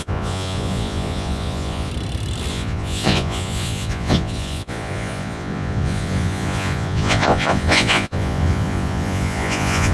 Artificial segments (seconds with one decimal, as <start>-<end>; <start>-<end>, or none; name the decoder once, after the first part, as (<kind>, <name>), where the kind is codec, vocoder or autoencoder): 0.0-1.9 (vocoder, Vocos); 2.5-9.9